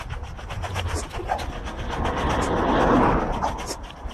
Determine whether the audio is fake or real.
real